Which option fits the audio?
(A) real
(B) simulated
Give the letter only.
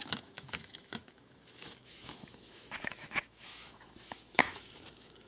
B